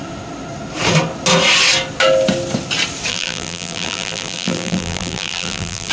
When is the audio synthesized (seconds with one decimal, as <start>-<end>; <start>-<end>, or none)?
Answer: 3.1-5.9